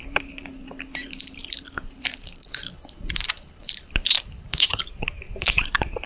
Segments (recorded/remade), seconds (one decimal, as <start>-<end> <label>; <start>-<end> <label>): 0.0-6.1 remade